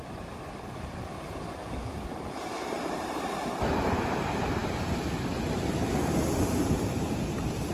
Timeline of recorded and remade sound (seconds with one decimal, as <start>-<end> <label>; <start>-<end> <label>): 0.0-1.6 remade; 1.6-2.3 recorded; 2.3-7.7 remade

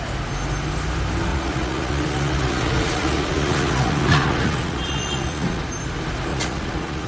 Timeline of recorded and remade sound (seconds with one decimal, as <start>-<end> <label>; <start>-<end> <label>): 0.0-1.3 recorded; 1.3-5.6 remade; 5.6-6.3 recorded; 6.3-7.1 remade

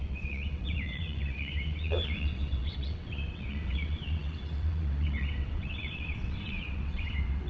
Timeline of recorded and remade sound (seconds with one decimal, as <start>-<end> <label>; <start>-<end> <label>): 0.0-7.5 remade

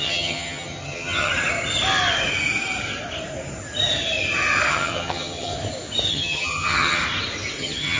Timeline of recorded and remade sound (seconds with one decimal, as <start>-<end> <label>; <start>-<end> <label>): 0.0-1.3 remade; 1.3-4.7 recorded; 4.7-5.5 remade; 5.5-6.1 recorded; 6.1-7.0 remade; 7.0-7.6 recorded; 7.6-8.0 remade